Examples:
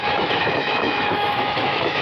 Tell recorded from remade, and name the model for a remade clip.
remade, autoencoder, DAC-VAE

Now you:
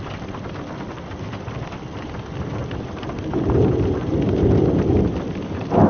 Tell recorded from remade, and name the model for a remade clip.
recorded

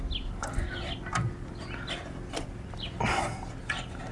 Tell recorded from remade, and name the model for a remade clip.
recorded